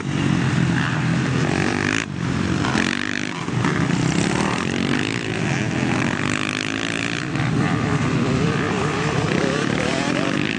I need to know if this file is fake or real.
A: fake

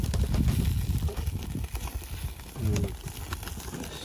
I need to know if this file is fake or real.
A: real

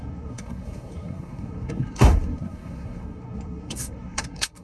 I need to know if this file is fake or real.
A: fake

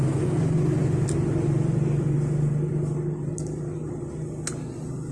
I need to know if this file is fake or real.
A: real